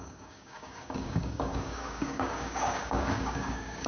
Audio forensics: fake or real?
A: fake